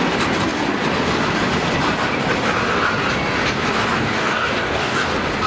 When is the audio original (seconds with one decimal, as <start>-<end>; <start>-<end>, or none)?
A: 0.0-3.9; 5.1-5.5